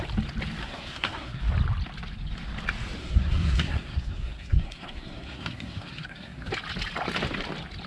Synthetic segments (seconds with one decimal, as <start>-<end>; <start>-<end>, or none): 0.6-1.4; 3.0-6.5